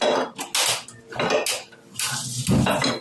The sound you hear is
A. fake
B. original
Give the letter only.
B